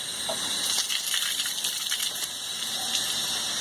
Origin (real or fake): real